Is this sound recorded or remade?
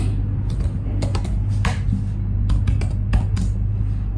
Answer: recorded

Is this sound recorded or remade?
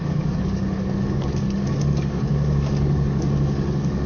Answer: remade